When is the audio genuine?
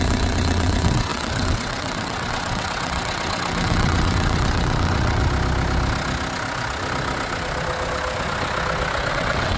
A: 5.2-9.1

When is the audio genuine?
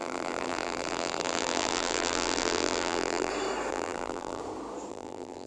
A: 3.3-3.7; 4.4-4.9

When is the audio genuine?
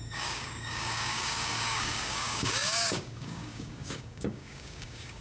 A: none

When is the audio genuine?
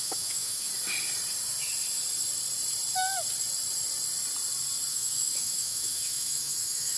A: 0.7-4.9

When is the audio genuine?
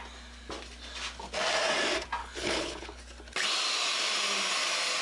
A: 0.0-2.2; 3.0-5.0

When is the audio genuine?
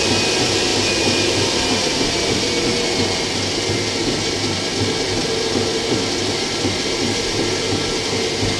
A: 0.0-8.6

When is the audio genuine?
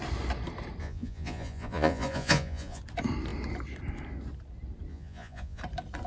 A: 0.0-0.8; 2.8-4.9; 5.6-6.1